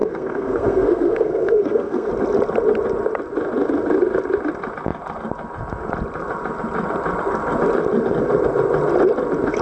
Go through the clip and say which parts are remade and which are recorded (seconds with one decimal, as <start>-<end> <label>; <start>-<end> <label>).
0.0-2.1 remade; 2.1-9.6 recorded